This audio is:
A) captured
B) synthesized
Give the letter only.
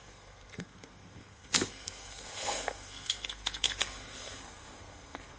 B